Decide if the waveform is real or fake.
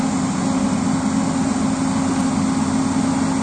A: real